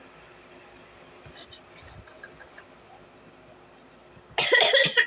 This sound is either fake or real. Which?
real